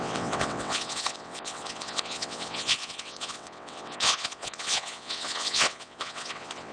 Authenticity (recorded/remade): remade